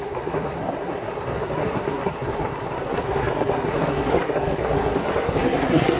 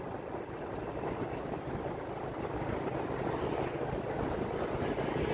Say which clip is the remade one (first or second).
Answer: first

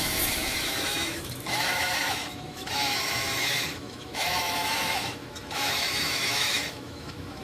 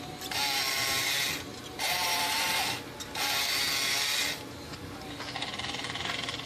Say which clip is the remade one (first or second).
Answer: first